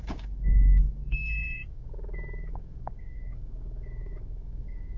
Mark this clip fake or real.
fake